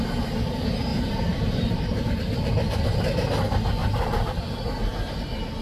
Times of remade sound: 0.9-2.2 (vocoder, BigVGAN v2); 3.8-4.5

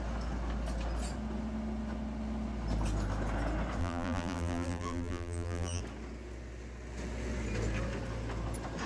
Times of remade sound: 3.8-5.8 (vocoder, BigVGAN v2)

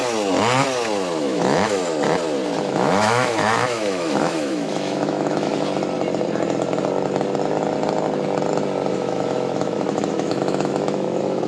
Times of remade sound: 1.2-1.8 (autoencoder, DAC-VAE); 2.6-5.5; 8.9-11.5

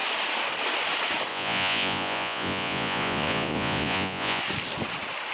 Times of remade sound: 1.3-4.4 (vocoder, Vocos)

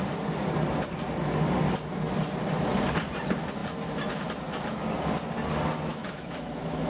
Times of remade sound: 5.9-6.9 (autoencoder, DAC-VAE)

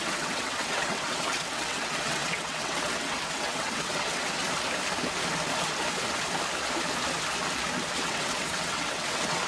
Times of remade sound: 0.0-4.4 (vocoder, WaveNeXt); 7.9-9.5